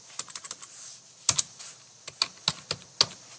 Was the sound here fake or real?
real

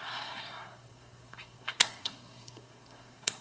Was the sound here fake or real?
fake